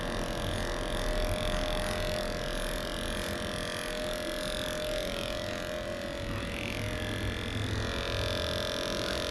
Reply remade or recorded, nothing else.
recorded